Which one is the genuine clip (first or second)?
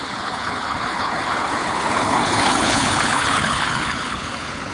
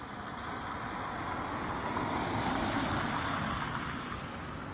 second